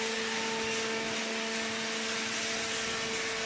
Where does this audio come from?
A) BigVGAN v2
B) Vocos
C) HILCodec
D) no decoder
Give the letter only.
D